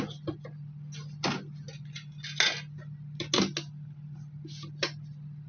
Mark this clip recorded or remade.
recorded